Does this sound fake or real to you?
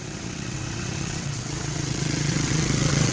fake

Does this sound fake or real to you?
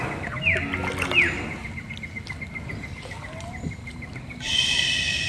real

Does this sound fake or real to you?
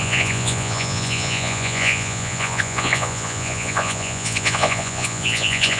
fake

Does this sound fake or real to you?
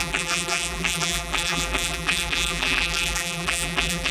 fake